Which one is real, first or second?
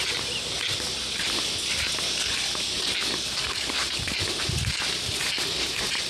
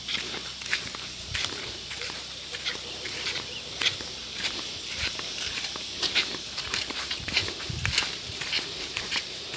first